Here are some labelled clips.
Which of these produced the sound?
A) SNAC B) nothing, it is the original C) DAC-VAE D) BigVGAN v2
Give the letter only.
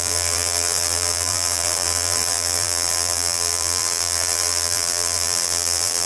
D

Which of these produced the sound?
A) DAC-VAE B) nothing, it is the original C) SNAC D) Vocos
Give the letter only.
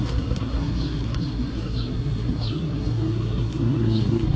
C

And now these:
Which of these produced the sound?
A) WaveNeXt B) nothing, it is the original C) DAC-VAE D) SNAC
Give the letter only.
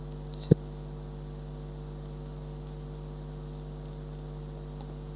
B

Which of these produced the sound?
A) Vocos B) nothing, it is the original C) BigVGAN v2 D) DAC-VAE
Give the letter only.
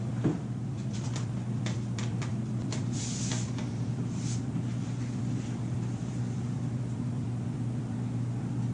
C